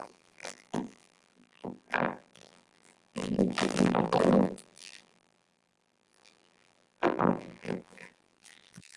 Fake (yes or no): yes